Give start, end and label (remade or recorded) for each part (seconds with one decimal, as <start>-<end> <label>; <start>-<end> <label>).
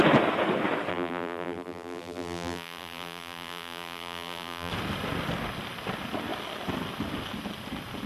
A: 0.0-0.9 recorded; 0.9-4.7 remade; 4.7-8.1 recorded